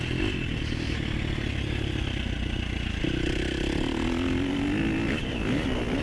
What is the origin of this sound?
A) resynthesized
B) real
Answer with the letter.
B